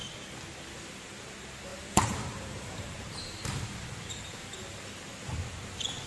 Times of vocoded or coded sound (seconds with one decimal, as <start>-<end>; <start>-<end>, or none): 1.7-5.4

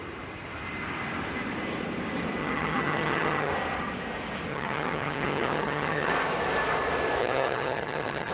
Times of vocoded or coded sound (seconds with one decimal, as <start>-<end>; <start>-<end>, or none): 2.4-3.5; 4.5-6.1; 7.2-8.3

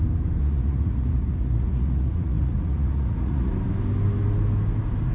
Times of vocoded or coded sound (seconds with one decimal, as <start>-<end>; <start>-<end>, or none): 0.4-3.5

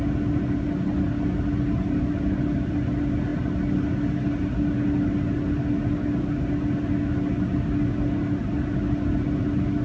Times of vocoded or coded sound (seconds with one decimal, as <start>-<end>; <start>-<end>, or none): none

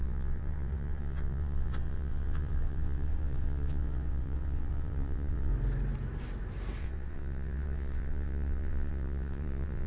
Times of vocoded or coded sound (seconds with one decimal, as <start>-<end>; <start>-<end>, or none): 0.0-5.5; 6.8-9.9

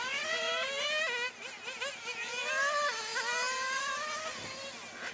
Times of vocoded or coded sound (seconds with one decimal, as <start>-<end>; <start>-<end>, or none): none

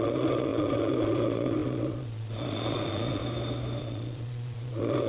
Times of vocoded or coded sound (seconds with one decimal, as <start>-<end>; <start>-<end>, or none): 0.0-3.2; 3.8-5.1